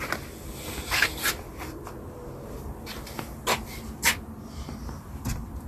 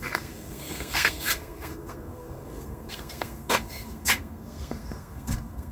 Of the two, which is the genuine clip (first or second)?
first